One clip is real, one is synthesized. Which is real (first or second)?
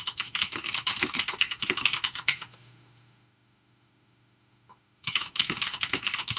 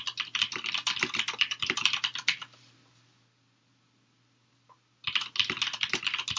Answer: second